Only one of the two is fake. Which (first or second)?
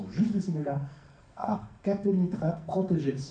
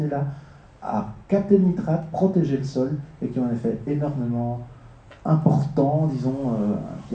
first